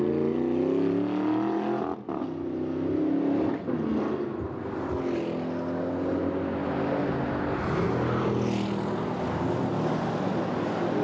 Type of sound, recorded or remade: recorded